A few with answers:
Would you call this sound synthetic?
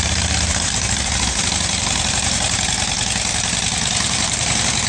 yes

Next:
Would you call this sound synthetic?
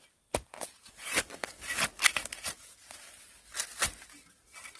no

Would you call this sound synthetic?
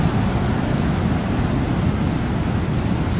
no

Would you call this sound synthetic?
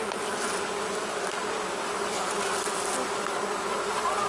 no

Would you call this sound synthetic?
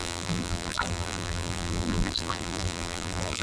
yes